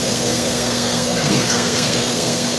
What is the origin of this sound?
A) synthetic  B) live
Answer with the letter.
A